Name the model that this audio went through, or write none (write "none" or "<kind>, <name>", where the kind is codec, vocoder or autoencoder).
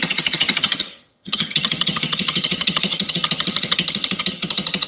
vocoder, HiFi-GAN